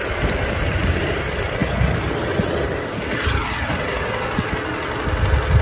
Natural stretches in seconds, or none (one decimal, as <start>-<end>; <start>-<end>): 1.2-1.6; 2.4-5.6